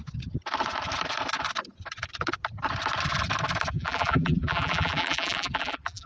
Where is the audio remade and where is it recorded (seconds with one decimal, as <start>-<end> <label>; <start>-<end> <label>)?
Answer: 0.0-3.7 recorded; 3.7-6.1 remade